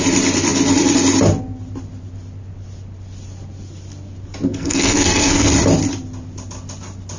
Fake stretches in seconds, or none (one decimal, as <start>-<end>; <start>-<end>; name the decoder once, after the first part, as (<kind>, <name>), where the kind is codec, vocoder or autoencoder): 4.5-5.5 (codec, SNAC)